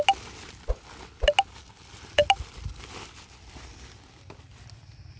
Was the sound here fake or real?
real